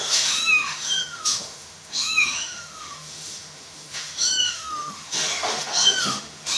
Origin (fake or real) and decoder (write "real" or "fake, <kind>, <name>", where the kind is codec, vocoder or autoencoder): fake, autoencoder, DAC-VAE